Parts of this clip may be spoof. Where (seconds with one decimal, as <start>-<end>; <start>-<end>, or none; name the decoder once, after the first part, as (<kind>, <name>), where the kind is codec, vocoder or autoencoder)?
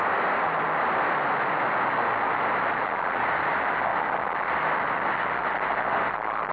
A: none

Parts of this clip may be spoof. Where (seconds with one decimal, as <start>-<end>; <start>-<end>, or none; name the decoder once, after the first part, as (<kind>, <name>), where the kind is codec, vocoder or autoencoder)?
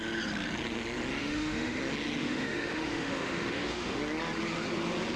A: 1.2-1.8 (autoencoder, DAC-VAE); 2.2-4.0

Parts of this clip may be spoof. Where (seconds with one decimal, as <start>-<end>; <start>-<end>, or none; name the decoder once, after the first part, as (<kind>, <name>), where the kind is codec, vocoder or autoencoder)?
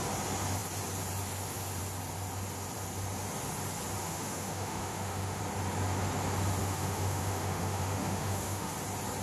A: 4.0-5.4 (autoencoder, DAC-VAE); 6.6-8.7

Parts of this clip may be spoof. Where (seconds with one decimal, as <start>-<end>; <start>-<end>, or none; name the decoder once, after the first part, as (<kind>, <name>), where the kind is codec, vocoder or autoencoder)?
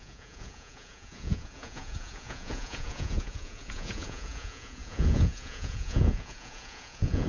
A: 0.0-7.3 (vocoder, Vocos)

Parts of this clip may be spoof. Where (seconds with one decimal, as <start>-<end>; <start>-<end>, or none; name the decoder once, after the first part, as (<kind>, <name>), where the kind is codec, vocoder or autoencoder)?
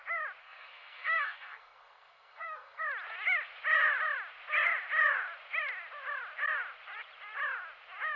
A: 0.4-2.8 (codec, SNAC)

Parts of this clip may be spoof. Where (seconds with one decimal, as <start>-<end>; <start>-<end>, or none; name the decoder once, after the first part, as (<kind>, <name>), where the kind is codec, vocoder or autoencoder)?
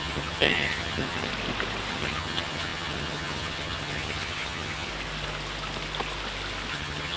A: 0.0-1.3 (vocoder, HiFi-GAN); 1.9-4.9; 6.7-7.2